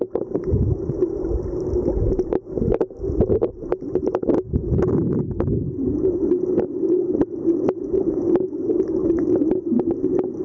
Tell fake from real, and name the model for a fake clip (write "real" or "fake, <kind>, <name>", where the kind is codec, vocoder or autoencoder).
real